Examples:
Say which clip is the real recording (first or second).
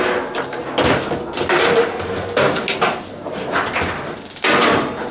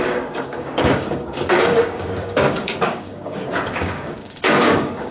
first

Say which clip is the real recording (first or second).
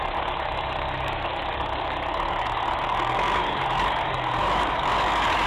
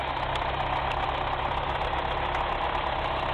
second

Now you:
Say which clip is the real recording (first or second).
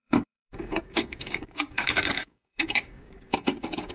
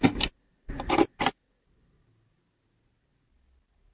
second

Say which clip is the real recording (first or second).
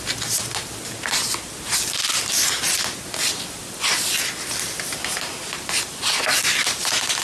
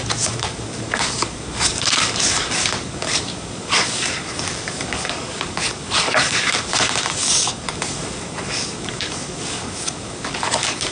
first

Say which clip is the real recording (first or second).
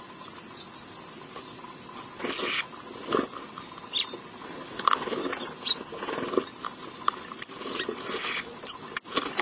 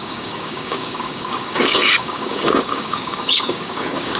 first